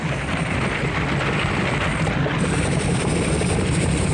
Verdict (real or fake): real